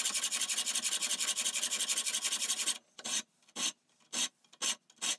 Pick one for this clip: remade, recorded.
recorded